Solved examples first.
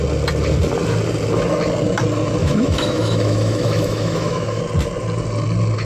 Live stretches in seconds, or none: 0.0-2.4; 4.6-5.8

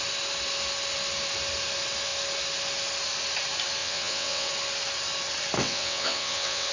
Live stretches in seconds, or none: 0.0-3.8; 4.5-5.6

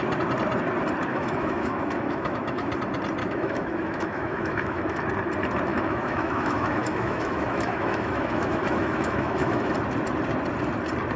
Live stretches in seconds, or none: 0.0-1.1; 2.7-3.2; 5.0-5.7; 9.7-11.2

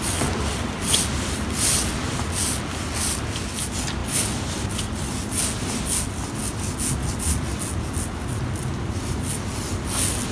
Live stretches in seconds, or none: 0.0-10.3